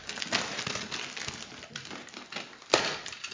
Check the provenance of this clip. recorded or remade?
recorded